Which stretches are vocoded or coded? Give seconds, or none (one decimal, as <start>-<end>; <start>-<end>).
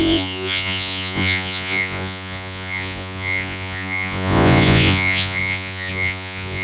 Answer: 0.0-6.6